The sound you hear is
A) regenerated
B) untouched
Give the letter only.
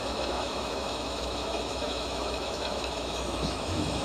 A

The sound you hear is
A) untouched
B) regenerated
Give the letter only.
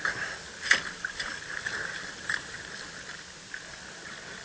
A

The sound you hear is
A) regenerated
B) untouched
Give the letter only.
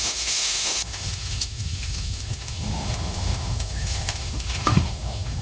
A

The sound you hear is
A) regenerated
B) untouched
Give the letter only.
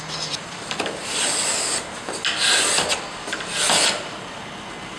B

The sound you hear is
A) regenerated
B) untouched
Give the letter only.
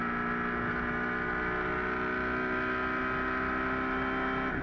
B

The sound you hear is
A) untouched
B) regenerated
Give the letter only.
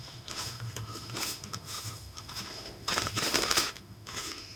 B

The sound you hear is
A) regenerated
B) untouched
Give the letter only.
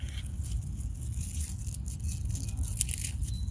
B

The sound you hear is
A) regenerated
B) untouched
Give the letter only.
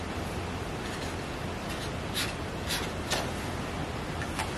B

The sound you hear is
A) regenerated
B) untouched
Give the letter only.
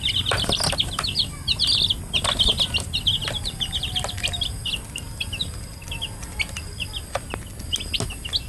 B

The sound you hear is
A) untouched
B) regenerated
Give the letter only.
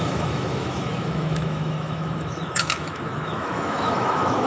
B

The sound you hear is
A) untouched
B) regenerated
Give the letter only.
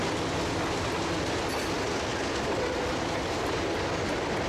A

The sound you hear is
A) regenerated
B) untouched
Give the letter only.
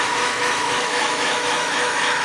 A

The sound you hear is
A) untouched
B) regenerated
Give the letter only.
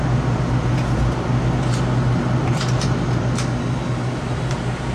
A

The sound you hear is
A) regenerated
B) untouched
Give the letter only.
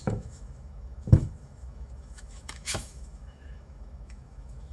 A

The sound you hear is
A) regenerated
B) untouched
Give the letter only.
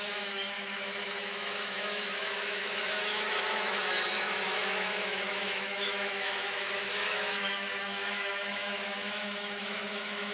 A